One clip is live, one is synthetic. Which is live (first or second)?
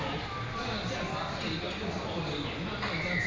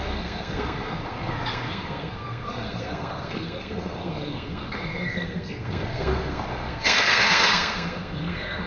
first